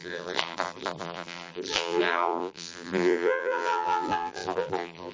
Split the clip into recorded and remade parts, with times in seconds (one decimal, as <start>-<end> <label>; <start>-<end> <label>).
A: 0.0-5.1 remade